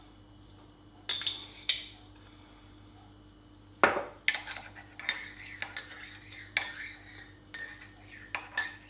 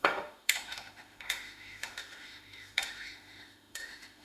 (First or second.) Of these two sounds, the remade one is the second